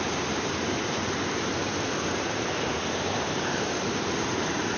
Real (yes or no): no